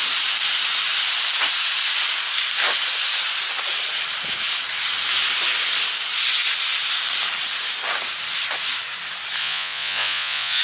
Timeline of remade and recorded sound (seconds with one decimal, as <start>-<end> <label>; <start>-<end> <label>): 0.0-9.4 recorded; 9.4-10.6 remade